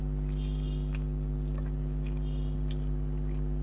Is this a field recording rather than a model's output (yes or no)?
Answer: yes